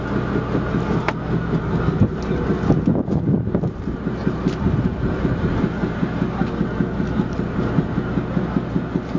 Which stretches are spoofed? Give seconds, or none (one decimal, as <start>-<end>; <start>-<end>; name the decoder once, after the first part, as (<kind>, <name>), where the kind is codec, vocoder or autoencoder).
4.2-6.2 (vocoder, BigVGAN v2)